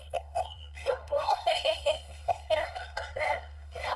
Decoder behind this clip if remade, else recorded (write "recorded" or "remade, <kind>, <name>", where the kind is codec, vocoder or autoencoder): remade, codec, SNAC